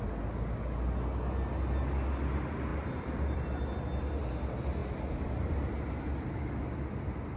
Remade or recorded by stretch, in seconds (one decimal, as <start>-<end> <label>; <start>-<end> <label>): 0.0-2.7 recorded; 2.7-3.8 remade; 3.8-7.4 recorded